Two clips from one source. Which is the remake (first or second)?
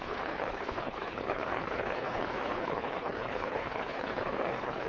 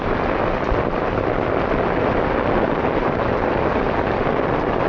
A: first